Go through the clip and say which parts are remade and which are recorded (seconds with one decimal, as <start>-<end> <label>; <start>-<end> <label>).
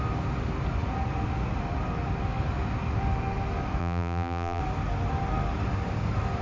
0.0-3.8 recorded; 3.8-4.6 remade; 4.6-6.4 recorded